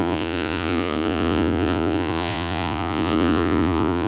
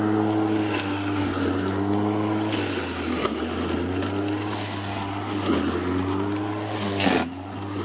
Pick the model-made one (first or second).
first